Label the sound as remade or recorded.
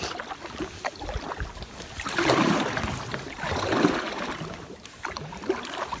recorded